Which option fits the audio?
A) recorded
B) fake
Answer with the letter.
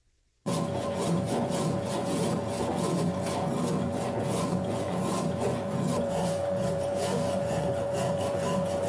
B